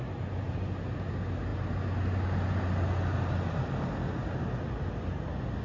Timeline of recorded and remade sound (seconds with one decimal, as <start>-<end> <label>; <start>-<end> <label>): 0.0-5.6 recorded